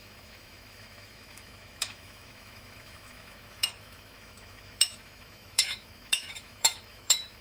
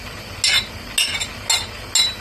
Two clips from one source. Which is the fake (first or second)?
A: first